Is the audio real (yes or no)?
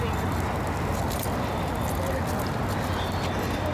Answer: yes